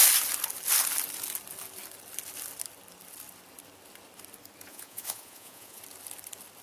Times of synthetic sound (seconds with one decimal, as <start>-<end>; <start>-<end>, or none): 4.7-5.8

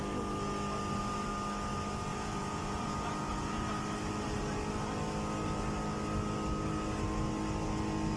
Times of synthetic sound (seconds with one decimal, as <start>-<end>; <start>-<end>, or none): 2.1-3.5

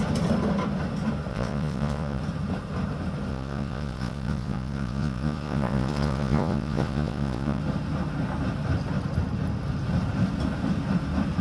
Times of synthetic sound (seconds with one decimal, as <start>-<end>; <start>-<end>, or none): 1.3-2.2; 3.3-7.6